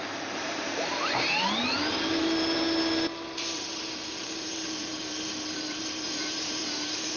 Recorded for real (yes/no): no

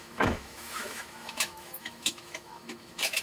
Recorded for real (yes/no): no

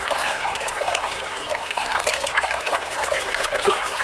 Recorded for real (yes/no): no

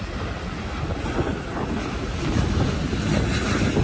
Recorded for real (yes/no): yes